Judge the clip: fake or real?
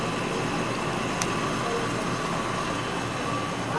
real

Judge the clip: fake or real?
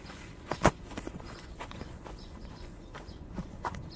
fake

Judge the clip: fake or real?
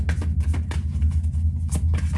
real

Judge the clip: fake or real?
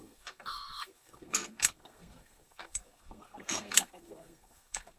fake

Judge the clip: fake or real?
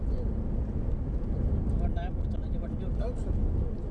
real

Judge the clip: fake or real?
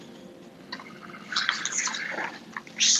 real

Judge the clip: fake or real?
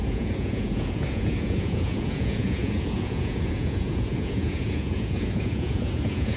fake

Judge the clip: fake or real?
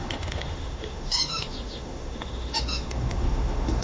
fake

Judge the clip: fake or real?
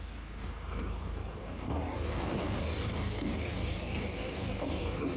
fake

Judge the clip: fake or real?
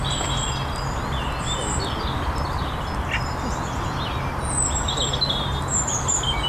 real